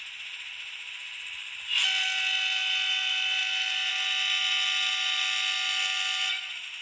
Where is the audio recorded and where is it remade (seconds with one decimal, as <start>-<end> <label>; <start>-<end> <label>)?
0.0-6.8 recorded